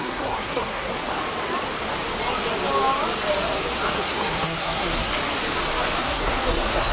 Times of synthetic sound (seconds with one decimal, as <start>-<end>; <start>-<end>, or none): 0.0-0.9; 4.0-5.1; 6.0-6.9